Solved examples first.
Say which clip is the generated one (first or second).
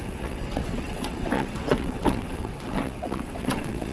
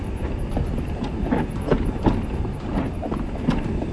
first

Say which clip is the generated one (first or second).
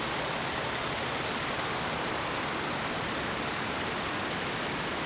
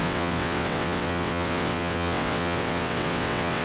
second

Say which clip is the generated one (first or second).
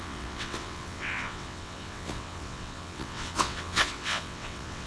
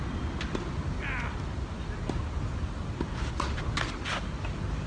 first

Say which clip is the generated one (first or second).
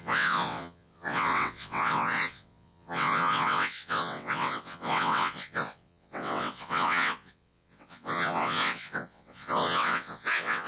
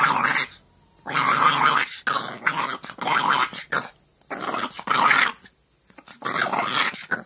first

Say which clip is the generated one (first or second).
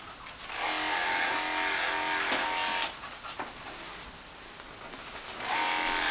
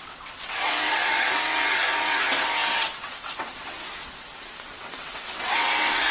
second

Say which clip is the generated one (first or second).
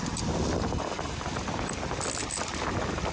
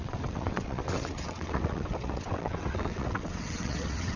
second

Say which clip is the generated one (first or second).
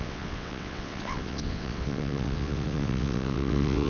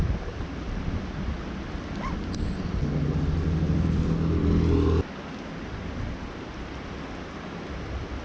first